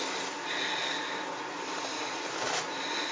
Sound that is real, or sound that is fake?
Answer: real